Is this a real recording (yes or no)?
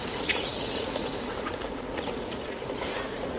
no